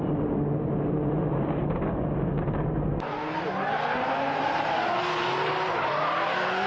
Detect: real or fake real